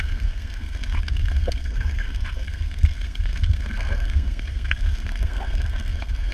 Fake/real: fake